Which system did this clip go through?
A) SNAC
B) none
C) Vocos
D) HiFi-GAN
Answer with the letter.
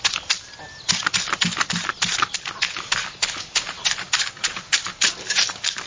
B